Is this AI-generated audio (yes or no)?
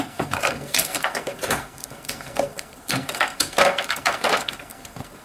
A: yes